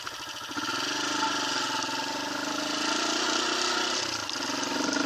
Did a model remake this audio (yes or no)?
no